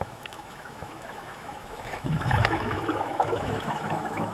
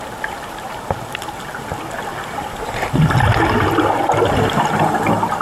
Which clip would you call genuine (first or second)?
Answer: second